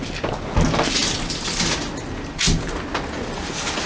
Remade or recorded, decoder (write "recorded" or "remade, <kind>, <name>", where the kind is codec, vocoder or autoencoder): recorded